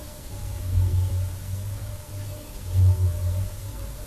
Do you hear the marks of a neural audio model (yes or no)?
yes